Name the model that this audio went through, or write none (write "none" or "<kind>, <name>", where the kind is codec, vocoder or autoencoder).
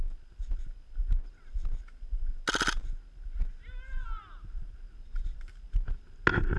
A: none